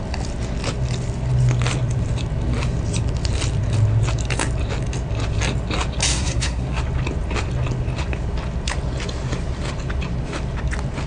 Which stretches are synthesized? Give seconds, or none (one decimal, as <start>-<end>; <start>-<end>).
6.1-6.8